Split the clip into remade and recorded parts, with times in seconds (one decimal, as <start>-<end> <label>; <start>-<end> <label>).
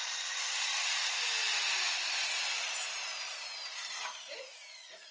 0.0-1.2 remade; 1.2-4.3 recorded; 4.3-5.1 remade